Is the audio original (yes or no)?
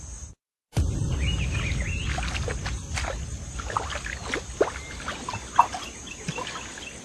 yes